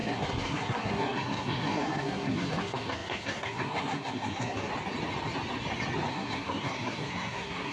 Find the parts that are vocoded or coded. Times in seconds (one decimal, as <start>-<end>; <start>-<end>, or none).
0.0-4.7; 6.1-7.7